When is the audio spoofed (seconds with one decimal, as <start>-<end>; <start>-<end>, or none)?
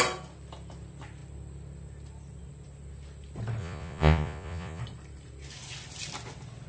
3.6-4.8